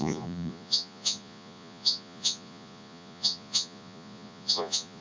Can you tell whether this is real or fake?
fake